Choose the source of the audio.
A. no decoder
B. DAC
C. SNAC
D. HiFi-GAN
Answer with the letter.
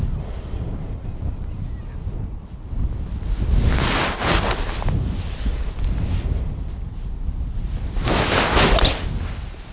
A